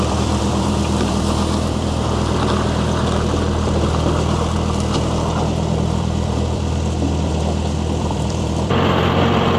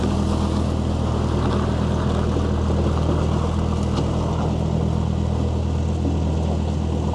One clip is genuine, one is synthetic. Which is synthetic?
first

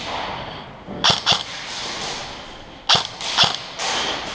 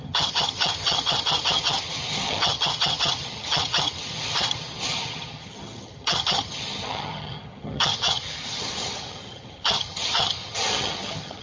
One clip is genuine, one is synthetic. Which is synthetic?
second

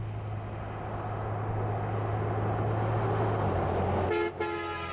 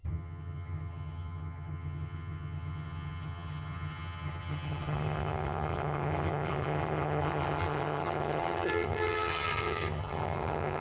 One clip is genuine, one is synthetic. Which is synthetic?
second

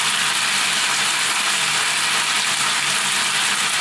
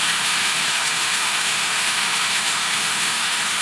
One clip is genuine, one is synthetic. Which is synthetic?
second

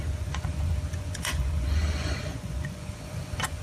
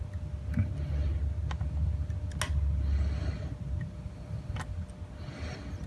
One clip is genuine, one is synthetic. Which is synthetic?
first